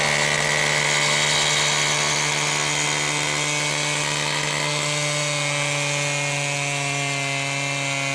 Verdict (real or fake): real